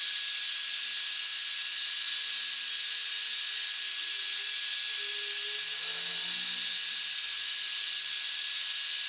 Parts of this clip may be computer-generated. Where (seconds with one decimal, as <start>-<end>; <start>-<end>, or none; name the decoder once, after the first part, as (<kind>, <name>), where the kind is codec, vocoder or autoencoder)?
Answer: none

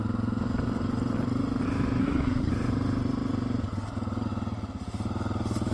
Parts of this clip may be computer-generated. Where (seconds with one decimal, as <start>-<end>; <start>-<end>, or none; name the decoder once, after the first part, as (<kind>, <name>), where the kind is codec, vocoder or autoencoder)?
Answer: 2.0-2.5 (codec, SNAC)

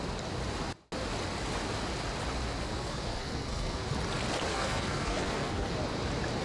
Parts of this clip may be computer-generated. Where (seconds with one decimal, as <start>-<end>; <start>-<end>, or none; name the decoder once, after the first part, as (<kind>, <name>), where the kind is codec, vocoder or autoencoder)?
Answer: 2.6-3.9 (codec, SNAC); 4.5-5.7

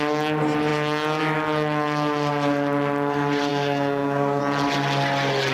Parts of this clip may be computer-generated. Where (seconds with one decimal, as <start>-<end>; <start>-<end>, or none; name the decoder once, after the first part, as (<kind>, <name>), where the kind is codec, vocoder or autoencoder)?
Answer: 3.5-4.4 (codec, SNAC)

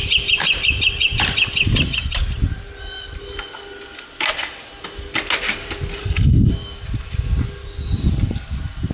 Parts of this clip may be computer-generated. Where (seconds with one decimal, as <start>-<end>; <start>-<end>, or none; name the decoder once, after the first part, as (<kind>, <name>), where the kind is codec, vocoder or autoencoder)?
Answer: 6.0-6.5 (codec, SNAC)